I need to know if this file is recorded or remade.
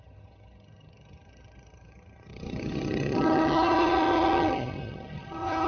remade